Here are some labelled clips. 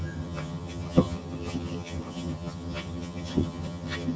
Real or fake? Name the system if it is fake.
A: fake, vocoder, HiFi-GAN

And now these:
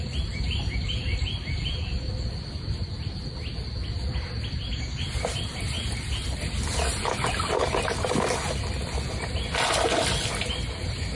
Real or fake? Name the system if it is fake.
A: real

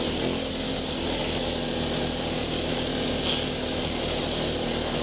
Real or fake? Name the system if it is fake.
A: real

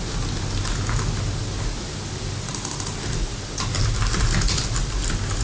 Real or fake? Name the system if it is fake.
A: real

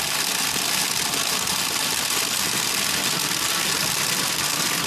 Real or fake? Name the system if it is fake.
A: real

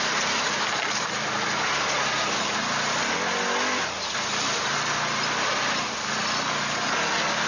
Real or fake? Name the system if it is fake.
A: real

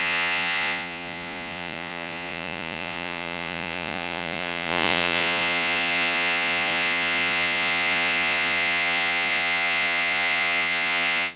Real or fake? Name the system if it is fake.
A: fake, vocoder, Vocos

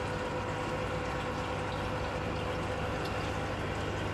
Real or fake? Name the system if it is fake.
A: real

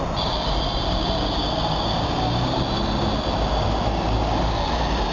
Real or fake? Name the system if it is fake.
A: real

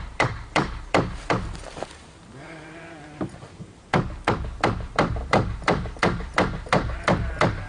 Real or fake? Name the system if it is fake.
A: fake, vocoder, BigVGAN v2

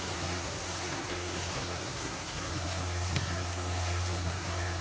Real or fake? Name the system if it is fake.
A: fake, codec, SNAC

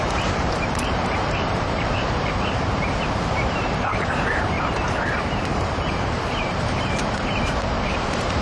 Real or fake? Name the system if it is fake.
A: fake, vocoder, BigVGAN v2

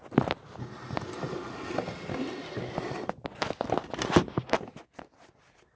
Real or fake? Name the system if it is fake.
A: real